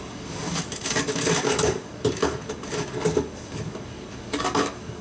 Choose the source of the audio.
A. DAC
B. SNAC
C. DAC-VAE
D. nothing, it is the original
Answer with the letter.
A